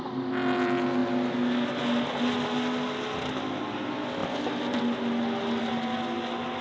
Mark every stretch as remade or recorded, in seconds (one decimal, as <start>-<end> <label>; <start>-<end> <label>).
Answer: 0.0-6.6 recorded